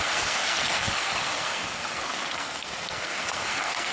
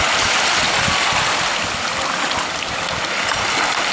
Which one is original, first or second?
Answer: second